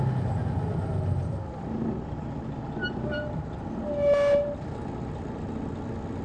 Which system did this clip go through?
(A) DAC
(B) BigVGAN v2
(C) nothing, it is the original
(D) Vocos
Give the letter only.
C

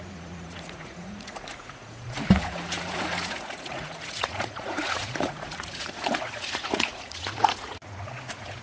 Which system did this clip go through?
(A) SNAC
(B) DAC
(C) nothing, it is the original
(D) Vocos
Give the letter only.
D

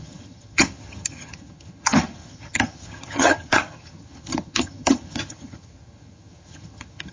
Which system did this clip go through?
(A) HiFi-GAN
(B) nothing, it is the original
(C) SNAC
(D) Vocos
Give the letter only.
A